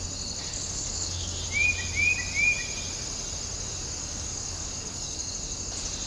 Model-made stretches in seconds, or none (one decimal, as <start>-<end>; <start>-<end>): 0.5-1.4; 4.0-5.3

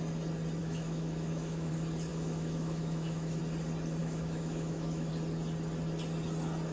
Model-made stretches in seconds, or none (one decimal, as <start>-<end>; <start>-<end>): 0.6-1.7; 2.1-3.4; 4.0-5.1

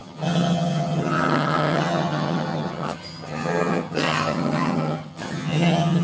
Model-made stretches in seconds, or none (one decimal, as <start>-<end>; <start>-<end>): 0.0-6.0

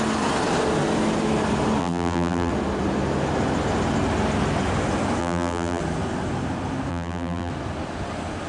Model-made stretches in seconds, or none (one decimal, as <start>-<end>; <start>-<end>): 1.8-2.5; 5.2-5.8; 6.9-7.5

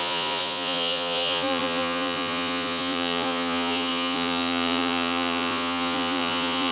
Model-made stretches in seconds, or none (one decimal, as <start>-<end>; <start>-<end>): 0.0-6.7

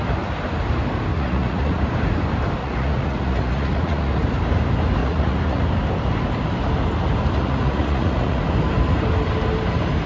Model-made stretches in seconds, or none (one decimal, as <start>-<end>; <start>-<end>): 1.1-1.8; 2.6-4.2; 5.0-5.6; 7.4-8.4

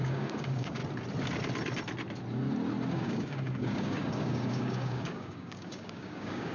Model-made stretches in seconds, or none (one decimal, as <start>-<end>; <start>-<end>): 0.0-0.8; 2.9-6.5

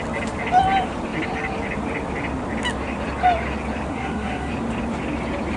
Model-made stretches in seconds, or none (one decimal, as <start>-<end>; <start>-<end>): 3.9-4.5